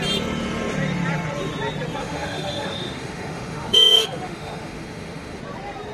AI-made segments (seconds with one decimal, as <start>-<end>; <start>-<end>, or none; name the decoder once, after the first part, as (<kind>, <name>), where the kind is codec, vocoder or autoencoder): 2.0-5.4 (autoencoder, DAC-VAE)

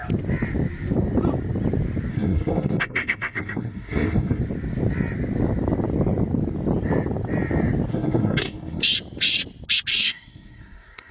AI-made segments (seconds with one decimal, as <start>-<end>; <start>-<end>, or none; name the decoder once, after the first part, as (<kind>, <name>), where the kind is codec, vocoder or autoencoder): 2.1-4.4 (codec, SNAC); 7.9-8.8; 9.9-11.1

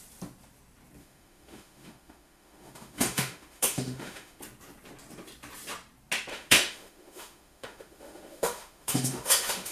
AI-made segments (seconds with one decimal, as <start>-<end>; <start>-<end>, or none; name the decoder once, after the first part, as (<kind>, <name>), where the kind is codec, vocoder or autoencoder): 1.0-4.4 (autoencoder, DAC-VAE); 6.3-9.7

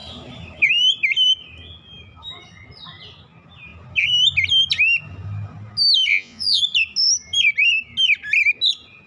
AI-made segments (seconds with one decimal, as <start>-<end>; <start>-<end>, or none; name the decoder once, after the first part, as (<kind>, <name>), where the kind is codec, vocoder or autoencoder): 6.1-6.6 (vocoder, Vocos)